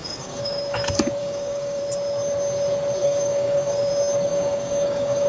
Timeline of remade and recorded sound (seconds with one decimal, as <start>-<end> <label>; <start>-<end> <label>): 0.0-0.6 remade; 0.6-1.2 recorded; 1.2-1.8 remade; 1.8-3.0 recorded; 3.0-3.9 remade; 3.9-4.3 recorded; 4.3-5.3 remade